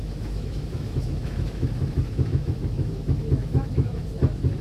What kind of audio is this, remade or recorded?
remade